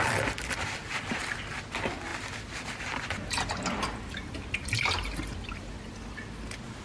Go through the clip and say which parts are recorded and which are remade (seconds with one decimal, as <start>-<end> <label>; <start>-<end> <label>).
0.0-6.8 recorded